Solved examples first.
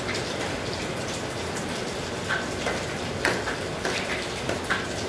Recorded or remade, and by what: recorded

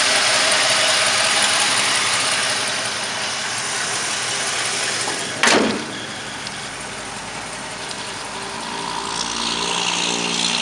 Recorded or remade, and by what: recorded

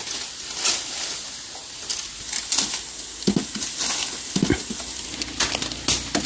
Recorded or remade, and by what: recorded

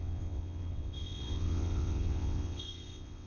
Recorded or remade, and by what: remade, vocoder, WaveNeXt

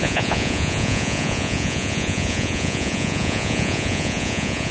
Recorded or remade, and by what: remade, vocoder, Vocos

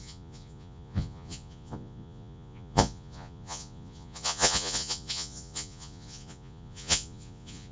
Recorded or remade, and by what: remade, vocoder, Vocos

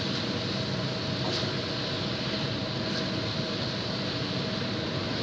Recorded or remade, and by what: recorded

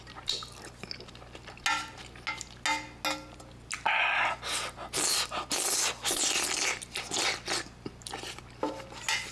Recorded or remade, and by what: recorded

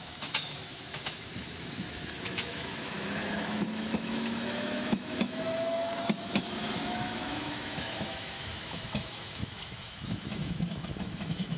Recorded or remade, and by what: remade, autoencoder, DAC-VAE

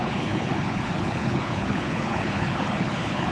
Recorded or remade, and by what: remade, codec, HILCodec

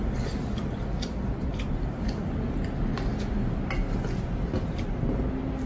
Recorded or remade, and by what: recorded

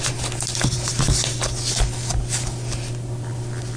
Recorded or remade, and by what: recorded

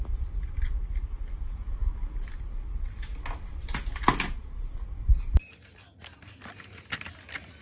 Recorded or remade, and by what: recorded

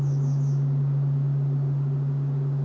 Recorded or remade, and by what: recorded